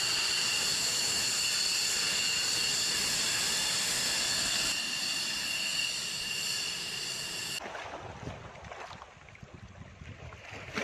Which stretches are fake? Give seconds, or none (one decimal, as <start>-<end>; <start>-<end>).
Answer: 0.7-1.3